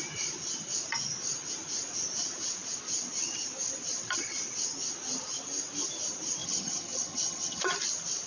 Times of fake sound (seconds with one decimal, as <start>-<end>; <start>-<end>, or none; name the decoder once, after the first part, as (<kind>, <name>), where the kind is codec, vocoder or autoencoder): 6.4-7.6 (vocoder, HiFi-GAN)